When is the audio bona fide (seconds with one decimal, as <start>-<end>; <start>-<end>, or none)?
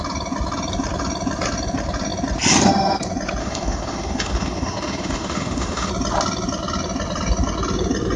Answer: 0.0-3.4; 5.9-8.2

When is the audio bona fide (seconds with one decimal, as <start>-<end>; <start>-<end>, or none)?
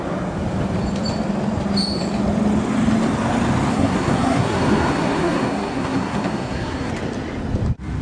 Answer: 0.0-3.7; 6.9-8.0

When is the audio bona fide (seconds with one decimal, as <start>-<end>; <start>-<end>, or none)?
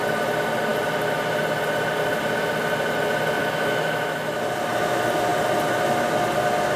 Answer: 0.0-3.4; 4.4-6.8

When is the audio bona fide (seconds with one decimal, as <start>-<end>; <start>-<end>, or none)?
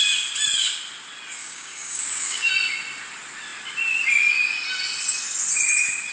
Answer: 0.0-1.4; 2.5-6.1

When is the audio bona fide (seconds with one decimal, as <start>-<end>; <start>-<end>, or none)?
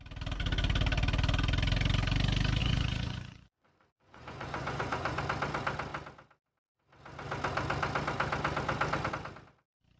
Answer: 0.0-2.6; 5.2-10.0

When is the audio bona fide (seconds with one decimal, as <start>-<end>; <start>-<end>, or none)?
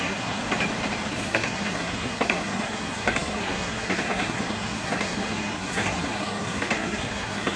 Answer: 0.4-1.1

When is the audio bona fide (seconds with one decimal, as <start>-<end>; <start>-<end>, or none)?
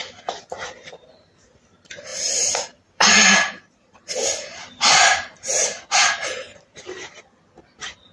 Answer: 0.0-2.1; 3.1-4.6; 7.2-8.1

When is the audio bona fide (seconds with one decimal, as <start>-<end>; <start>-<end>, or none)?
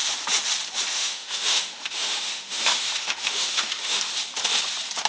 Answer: 0.0-0.9; 4.0-5.1